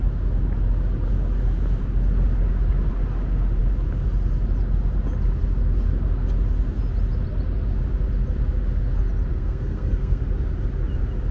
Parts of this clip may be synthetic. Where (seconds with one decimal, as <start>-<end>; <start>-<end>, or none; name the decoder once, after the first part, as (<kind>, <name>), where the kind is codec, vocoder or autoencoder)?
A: 9.3-10.2 (codec, SNAC)